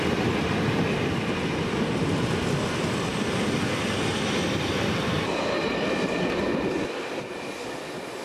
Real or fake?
real